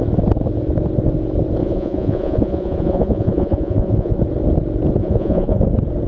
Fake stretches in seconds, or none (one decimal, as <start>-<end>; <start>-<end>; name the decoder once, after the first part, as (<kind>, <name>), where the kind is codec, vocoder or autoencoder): 1.6-4.2 (vocoder, Vocos); 5.0-5.6